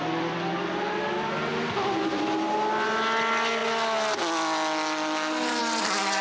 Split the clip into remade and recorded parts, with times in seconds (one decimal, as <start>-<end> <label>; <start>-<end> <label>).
0.0-6.2 recorded